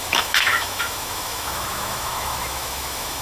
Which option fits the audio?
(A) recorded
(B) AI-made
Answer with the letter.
B